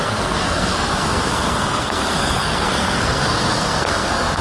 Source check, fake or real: fake